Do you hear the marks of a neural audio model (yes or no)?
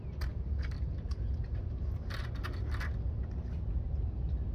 no